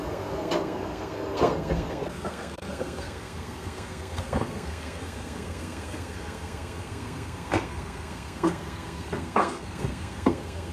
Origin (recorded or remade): remade